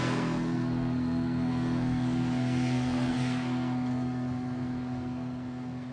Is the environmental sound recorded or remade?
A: remade